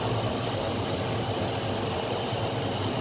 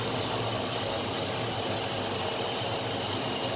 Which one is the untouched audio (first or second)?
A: second